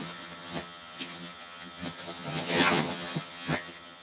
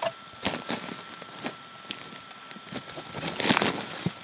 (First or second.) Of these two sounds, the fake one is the first